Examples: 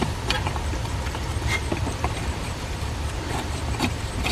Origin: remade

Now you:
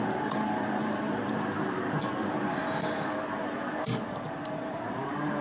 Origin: remade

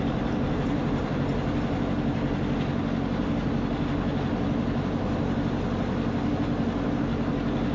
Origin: recorded